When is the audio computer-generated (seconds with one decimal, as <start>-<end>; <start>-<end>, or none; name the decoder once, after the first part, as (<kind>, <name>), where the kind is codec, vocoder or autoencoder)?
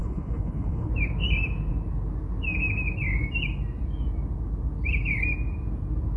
0.0-0.9 (codec, HILCodec)